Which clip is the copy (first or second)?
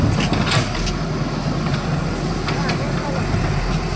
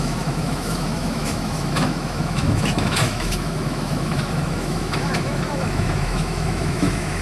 second